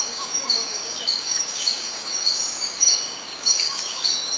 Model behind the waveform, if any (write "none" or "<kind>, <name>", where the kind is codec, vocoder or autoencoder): codec, DAC